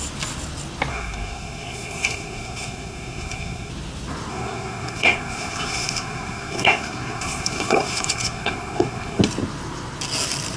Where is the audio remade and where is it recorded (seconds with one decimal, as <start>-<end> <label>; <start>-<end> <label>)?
0.0-0.9 recorded; 0.9-3.7 remade; 3.7-4.3 recorded; 4.3-9.2 remade; 9.2-10.6 recorded

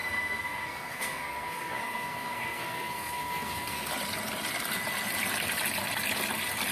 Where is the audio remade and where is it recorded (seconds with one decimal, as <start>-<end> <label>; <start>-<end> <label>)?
0.0-3.9 remade; 3.9-6.7 recorded

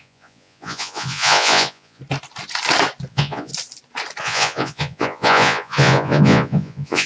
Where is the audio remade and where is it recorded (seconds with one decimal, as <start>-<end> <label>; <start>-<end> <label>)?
0.0-2.0 remade; 2.0-3.1 recorded; 3.1-3.5 remade; 3.5-4.2 recorded; 4.2-7.1 remade

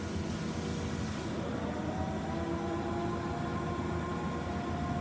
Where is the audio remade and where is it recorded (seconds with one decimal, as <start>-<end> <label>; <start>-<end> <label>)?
0.0-5.0 recorded

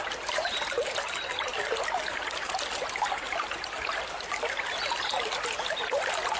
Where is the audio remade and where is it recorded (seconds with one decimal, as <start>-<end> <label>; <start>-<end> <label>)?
0.0-6.4 recorded